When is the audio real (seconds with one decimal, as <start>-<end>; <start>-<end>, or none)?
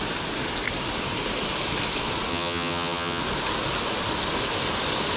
0.0-2.3; 3.2-5.2